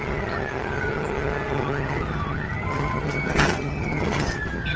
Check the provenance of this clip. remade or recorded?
remade